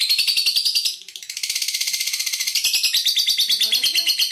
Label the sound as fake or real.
real